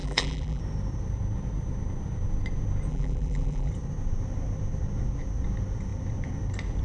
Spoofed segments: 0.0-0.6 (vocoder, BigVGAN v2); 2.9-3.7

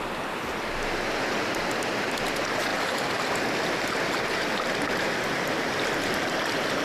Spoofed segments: 2.7-3.3 (vocoder, BigVGAN v2)

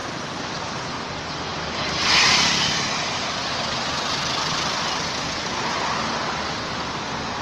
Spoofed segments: 0.0-0.8 (vocoder, BigVGAN v2); 1.5-5.6

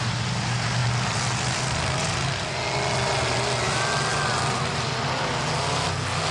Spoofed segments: none

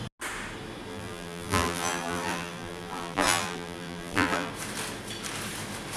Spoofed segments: 0.9-4.5 (vocoder, BigVGAN v2)

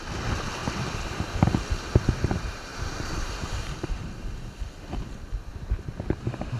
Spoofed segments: 0.6-1.3 (vocoder, BigVGAN v2); 2.7-4.1